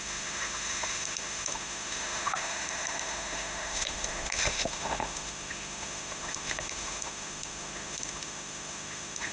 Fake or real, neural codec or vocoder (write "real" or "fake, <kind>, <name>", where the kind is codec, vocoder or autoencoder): fake, autoencoder, DAC-VAE